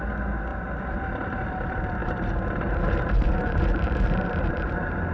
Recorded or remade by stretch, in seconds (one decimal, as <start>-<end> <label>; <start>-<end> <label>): 0.0-0.5 remade; 0.5-1.5 recorded; 1.5-5.1 remade